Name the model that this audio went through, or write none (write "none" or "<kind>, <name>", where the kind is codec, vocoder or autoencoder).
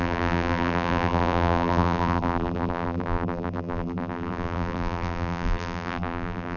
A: vocoder, BigVGAN v2